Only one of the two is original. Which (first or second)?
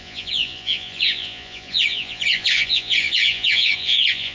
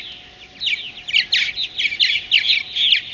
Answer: second